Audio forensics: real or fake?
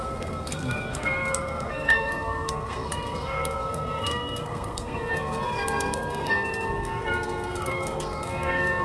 fake